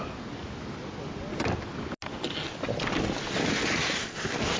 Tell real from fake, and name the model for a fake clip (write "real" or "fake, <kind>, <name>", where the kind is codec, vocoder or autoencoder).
real